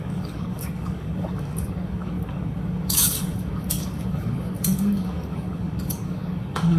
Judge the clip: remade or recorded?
remade